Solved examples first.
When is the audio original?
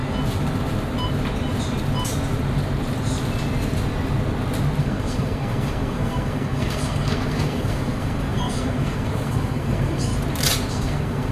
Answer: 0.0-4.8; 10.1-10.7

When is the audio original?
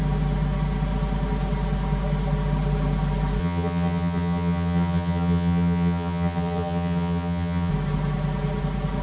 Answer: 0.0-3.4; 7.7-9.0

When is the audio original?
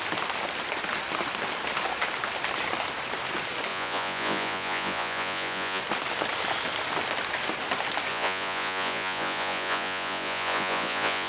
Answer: 0.0-3.7; 5.8-8.1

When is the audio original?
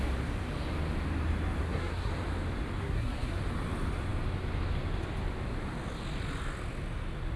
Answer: 0.0-1.6; 2.1-2.8; 3.4-7.4